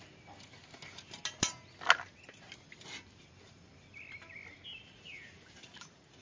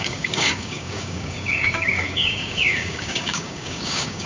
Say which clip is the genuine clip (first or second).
first